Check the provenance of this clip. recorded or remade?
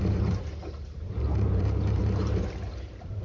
remade